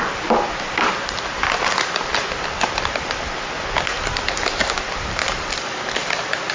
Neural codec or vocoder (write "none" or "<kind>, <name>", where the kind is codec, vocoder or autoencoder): none